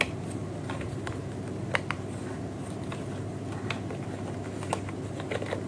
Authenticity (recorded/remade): recorded